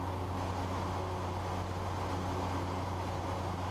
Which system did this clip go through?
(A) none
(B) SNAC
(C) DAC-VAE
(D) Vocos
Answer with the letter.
A